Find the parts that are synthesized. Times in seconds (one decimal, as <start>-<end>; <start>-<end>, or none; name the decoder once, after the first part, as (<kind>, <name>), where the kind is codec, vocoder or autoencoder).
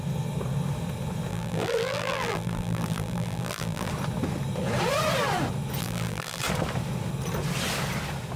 1.3-3.9 (vocoder, BigVGAN v2); 5.8-6.4